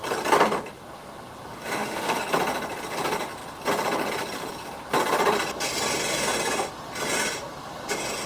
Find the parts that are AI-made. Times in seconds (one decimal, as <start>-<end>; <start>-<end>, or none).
1.5-2.2